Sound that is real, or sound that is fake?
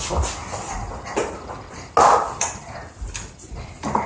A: real